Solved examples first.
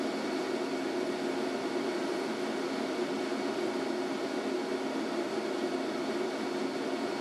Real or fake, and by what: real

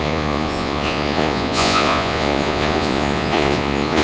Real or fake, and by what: fake, vocoder, Vocos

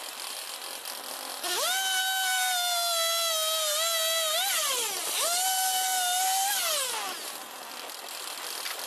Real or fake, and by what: real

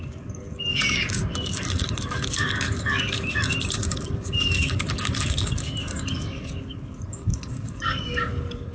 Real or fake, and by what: fake, codec, DAC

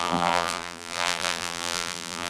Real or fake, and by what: fake, vocoder, BigVGAN v2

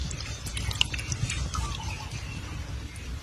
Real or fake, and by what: real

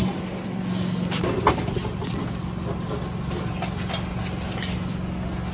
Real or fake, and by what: real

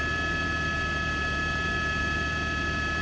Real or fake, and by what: real